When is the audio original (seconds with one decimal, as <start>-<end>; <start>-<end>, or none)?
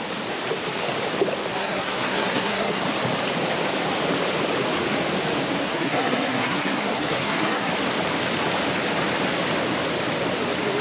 0.0-1.6; 2.8-5.6; 7.7-10.8